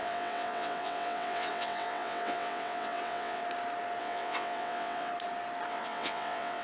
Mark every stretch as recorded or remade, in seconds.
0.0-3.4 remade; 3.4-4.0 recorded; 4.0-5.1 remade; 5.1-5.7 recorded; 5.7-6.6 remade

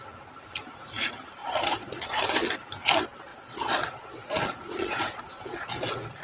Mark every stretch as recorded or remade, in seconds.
0.0-1.4 recorded; 1.4-2.2 remade; 2.2-3.3 recorded; 3.3-5.7 remade; 5.7-6.2 recorded